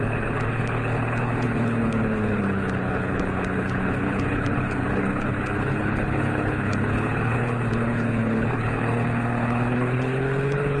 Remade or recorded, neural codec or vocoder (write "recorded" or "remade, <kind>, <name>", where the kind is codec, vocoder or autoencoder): remade, codec, HILCodec